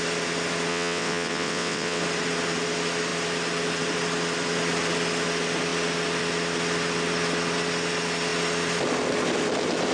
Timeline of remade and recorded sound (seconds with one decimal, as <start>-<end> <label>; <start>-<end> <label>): 0.0-0.7 recorded; 0.7-2.0 remade; 2.0-9.9 recorded